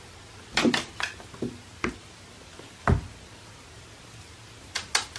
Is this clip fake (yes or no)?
no